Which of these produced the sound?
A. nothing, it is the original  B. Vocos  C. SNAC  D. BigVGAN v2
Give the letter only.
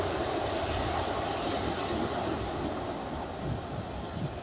A